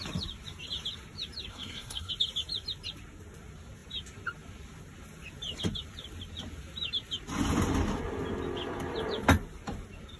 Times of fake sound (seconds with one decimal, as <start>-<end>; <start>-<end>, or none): 1.5-2.1